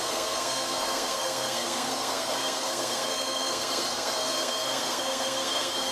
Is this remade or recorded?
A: remade